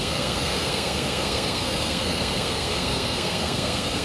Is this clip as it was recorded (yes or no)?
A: no